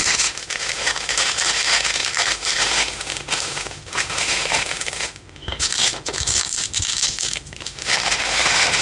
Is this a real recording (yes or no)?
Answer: no